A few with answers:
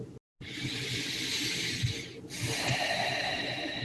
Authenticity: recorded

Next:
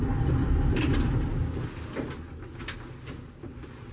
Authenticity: recorded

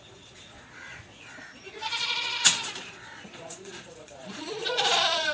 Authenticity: remade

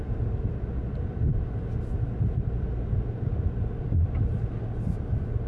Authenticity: recorded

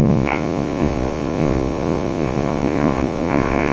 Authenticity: remade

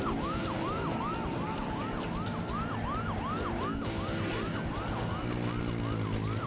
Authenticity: recorded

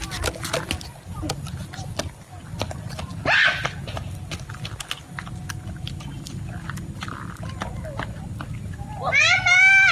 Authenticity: recorded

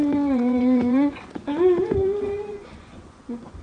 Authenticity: remade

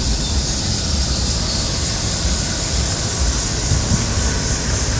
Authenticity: recorded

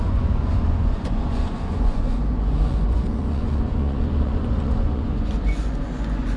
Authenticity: remade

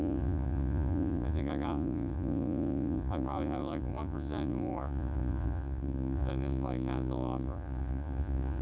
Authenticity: remade